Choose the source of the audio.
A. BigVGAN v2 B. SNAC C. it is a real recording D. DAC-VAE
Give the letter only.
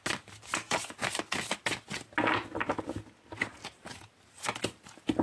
C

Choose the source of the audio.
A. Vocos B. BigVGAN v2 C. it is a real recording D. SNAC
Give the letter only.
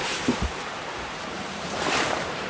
B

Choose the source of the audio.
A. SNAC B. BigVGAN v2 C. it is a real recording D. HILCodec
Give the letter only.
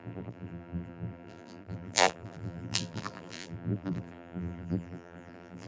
B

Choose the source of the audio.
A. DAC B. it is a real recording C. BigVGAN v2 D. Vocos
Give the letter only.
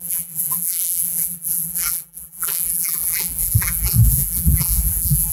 C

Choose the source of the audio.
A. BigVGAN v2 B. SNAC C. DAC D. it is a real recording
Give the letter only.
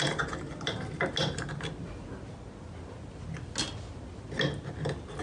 D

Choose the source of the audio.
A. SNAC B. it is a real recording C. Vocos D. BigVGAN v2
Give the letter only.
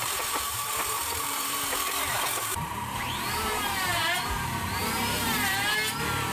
D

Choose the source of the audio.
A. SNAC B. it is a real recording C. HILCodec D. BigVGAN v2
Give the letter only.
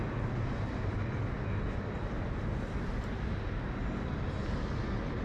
B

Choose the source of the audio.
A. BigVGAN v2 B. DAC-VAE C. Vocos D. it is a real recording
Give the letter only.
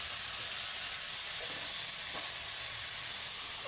D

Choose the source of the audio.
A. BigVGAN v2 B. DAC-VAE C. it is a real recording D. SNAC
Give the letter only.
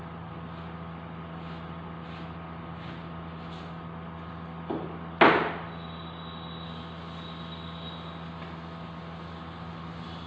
C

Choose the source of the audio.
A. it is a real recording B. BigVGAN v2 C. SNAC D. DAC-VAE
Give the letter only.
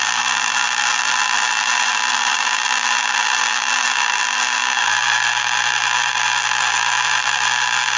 B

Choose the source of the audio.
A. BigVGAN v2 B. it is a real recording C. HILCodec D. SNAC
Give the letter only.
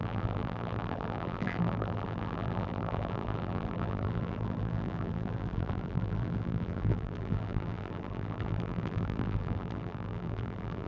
A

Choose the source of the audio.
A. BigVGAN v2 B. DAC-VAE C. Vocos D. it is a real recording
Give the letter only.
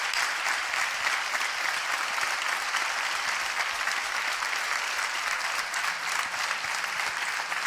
A